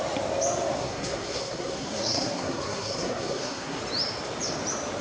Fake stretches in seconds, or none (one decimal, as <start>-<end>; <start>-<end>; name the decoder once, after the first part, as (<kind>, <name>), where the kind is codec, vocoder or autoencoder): 0.8-3.8 (codec, SNAC)